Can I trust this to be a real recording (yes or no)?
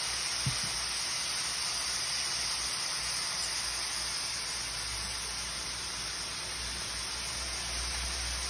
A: yes